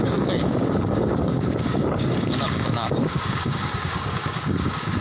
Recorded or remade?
remade